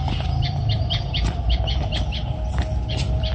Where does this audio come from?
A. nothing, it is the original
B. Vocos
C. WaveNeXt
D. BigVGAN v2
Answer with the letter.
D